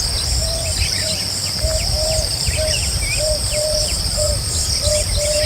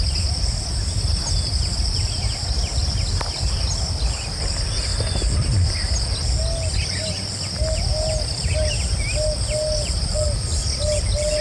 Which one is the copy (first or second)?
first